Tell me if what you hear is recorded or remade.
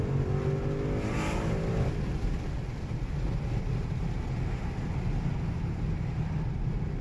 recorded